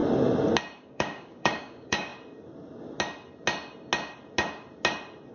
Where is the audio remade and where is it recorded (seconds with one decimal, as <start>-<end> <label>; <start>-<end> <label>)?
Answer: 0.0-0.8 recorded; 0.8-2.1 remade; 2.1-5.3 recorded